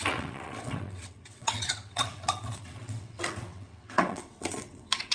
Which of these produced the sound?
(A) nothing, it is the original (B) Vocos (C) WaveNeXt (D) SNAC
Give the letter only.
C